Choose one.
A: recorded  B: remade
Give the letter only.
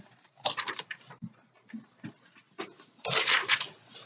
A